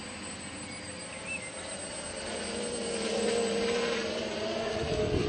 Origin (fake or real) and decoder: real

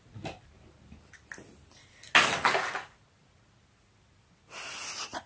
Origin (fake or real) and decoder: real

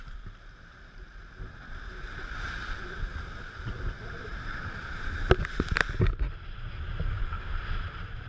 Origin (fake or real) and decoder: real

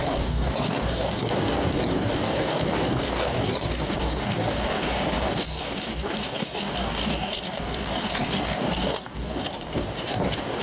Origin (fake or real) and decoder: fake, codec, DAC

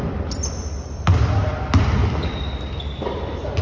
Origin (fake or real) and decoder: real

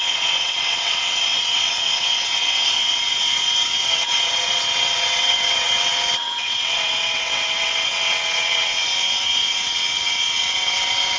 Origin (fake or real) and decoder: fake, vocoder, WaveNeXt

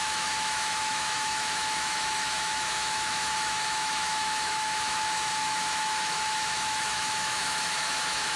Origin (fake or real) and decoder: fake, autoencoder, DAC-VAE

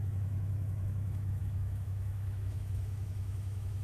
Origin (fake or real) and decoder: fake, autoencoder, DAC-VAE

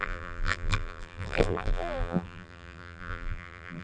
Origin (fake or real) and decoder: fake, vocoder, BigVGAN v2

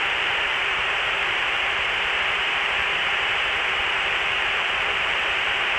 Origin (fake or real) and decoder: fake, vocoder, BigVGAN v2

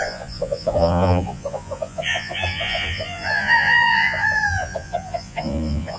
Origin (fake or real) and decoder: fake, vocoder, Vocos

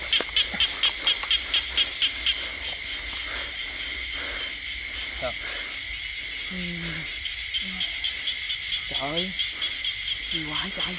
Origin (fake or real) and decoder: real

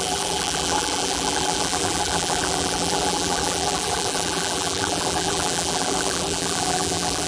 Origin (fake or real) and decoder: fake, vocoder, BigVGAN v2